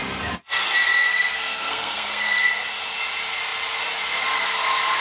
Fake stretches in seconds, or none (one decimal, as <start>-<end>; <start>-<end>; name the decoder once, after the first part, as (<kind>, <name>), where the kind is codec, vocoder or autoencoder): 1.1-2.4 (codec, SNAC)